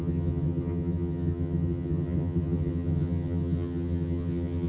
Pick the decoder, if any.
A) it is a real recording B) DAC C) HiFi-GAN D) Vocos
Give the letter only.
C